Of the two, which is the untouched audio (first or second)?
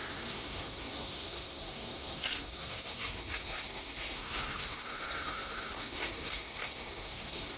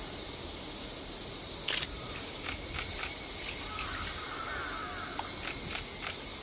second